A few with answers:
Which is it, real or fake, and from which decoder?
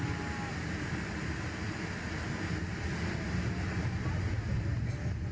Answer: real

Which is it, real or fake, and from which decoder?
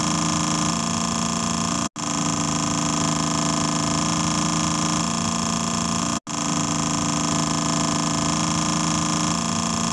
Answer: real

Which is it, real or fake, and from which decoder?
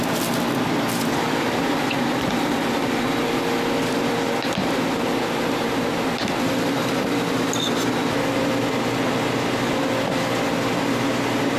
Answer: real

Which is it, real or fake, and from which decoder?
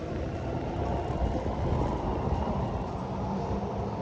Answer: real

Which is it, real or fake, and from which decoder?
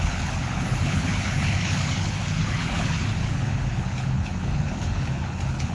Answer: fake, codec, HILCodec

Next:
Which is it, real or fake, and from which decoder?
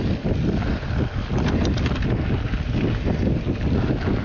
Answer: real